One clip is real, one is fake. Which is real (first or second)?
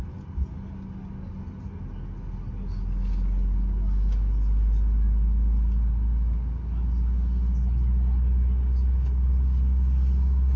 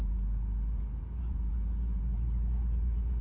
first